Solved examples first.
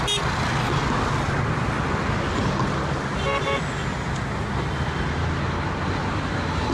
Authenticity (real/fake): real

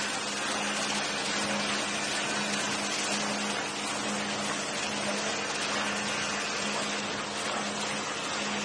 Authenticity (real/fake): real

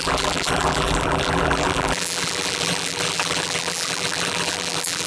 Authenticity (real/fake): fake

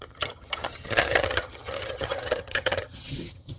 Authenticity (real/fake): fake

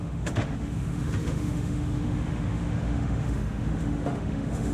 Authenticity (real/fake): fake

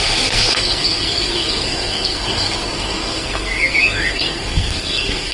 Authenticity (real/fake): fake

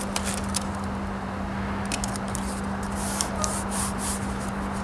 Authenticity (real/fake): real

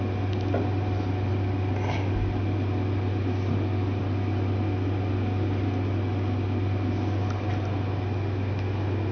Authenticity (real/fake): real